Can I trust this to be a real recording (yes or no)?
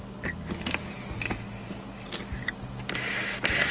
yes